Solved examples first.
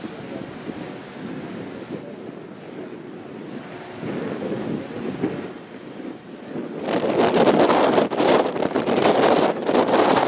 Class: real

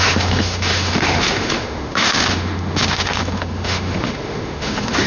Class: fake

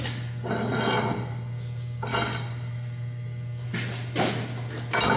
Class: real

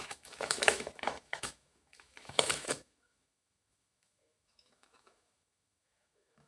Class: fake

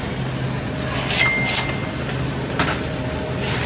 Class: real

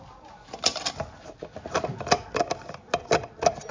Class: real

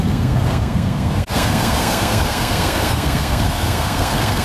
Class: fake